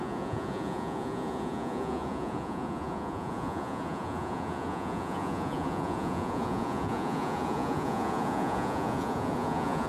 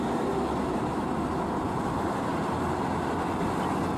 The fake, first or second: first